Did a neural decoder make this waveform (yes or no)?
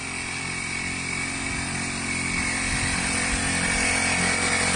no